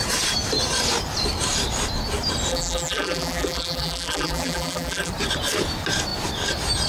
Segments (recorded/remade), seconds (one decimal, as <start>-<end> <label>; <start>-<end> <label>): 0.0-2.5 recorded; 2.5-5.1 remade; 5.1-6.9 recorded